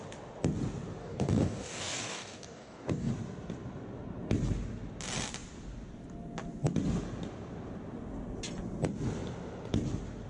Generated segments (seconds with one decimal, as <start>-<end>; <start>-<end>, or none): 1.0-3.1